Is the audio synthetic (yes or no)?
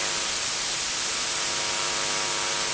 yes